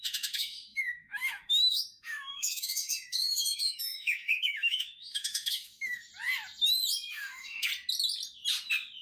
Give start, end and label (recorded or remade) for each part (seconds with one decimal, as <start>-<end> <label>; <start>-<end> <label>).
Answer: 0.0-6.1 remade; 6.1-7.1 recorded; 7.1-7.7 remade; 7.7-9.0 recorded